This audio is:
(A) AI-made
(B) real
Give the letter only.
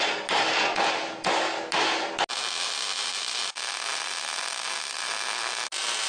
B